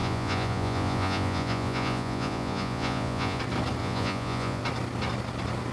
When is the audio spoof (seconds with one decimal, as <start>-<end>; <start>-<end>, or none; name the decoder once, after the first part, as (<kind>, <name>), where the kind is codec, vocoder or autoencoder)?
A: 0.0-3.4 (vocoder, Vocos); 3.8-4.6